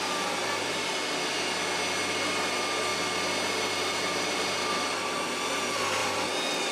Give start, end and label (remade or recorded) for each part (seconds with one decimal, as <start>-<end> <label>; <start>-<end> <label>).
0.0-0.4 recorded; 0.4-0.9 remade; 0.9-6.7 recorded